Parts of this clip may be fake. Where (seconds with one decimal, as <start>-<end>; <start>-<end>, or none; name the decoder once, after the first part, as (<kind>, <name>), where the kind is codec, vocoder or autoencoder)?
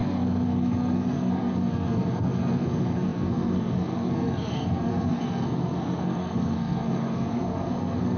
0.0-8.2 (codec, SNAC)